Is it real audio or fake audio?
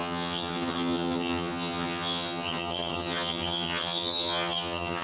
fake